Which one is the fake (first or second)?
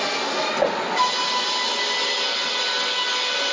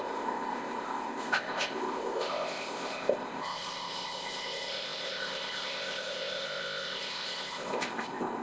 second